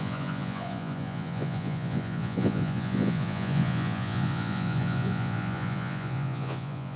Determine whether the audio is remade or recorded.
remade